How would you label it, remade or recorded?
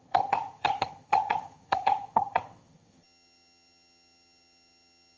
remade